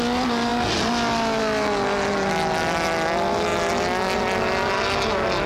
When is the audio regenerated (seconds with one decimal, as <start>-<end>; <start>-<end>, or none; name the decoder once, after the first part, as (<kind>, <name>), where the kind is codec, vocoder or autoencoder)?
none